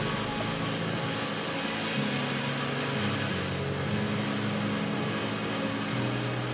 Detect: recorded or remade recorded